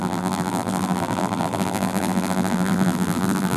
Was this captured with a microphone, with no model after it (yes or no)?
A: no